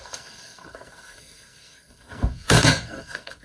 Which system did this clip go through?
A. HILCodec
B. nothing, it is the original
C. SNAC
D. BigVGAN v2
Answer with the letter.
C